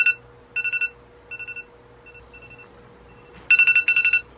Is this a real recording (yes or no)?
yes